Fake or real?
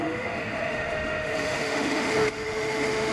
fake